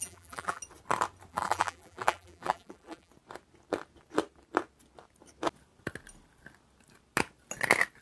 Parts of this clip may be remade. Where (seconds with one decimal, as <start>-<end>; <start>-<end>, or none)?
0.0-0.6; 1.3-3.1